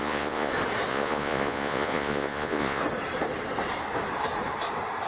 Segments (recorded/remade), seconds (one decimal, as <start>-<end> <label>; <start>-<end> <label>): 0.0-0.5 remade; 0.5-0.9 recorded; 0.9-2.8 remade; 2.8-5.1 recorded

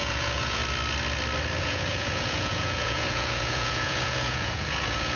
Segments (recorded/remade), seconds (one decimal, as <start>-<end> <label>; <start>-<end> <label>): 0.0-0.6 remade; 0.6-1.6 recorded; 1.6-5.2 remade

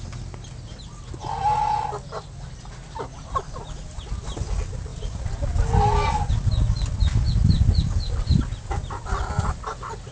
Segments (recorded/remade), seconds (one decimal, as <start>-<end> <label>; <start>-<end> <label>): 0.0-10.1 recorded

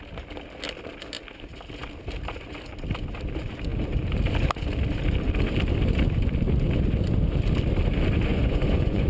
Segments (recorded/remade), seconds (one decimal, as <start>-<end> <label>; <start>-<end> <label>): 0.0-8.3 recorded; 8.3-9.1 remade

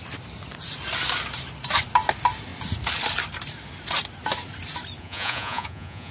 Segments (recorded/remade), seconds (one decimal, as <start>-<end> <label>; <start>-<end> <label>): 0.0-5.0 recorded; 5.0-6.1 remade

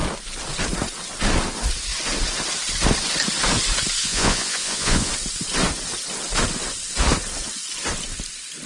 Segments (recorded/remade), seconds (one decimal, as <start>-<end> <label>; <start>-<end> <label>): 0.0-4.0 recorded; 4.0-5.1 remade; 5.1-8.7 recorded

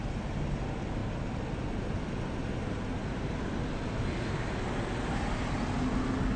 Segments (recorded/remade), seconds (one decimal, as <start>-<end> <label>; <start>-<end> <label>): 0.0-6.4 recorded